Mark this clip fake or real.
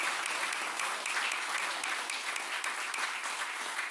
real